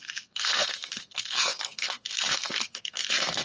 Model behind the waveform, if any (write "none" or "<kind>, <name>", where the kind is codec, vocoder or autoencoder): codec, SNAC